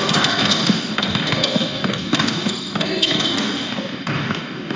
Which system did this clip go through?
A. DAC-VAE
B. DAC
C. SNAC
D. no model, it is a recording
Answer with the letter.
B